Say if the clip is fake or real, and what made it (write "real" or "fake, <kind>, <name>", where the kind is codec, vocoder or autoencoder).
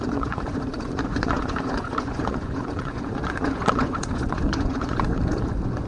fake, vocoder, Vocos